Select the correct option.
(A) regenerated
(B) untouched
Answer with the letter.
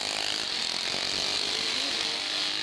B